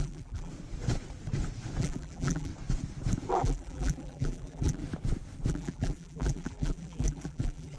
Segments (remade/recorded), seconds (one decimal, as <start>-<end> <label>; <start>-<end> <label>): 0.0-0.5 remade; 0.5-1.8 recorded; 1.8-2.5 remade; 2.5-3.3 recorded; 3.3-4.8 remade; 4.8-5.5 recorded; 5.5-7.8 remade